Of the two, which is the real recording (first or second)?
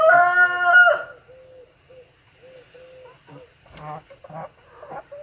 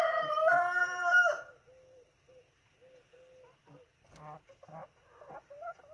first